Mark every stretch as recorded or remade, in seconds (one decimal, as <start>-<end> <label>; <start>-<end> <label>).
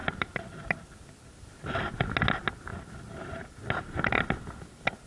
0.0-1.0 remade; 1.0-2.7 recorded; 2.7-3.6 remade; 3.6-5.1 recorded